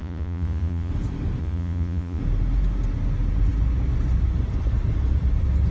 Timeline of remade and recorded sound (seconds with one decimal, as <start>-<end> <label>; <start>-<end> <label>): 0.0-0.9 remade; 0.9-1.4 recorded; 1.4-2.2 remade; 2.2-5.7 recorded